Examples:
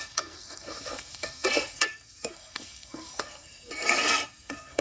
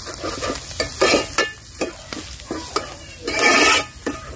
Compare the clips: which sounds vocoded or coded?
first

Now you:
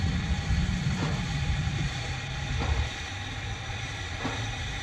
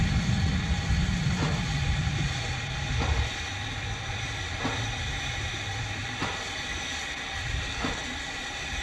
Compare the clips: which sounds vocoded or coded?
first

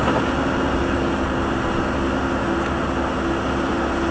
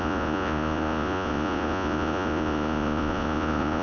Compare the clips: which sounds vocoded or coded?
second